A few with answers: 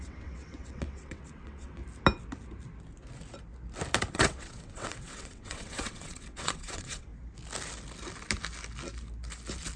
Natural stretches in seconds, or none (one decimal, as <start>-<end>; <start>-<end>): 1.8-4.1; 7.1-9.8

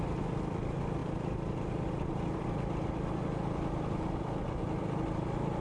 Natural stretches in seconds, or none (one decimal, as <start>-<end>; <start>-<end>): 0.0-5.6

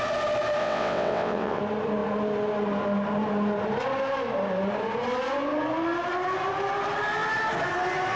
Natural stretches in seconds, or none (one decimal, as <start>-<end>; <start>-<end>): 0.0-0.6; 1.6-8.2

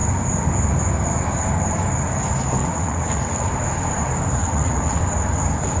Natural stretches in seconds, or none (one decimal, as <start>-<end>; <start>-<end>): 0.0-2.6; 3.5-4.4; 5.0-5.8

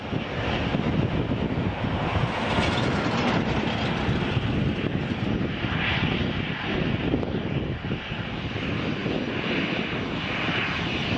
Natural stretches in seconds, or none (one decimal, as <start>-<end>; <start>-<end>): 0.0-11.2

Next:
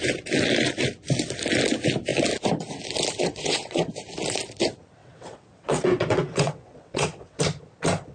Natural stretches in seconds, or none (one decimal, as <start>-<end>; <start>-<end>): 0.0-3.2; 3.9-5.0; 7.4-8.1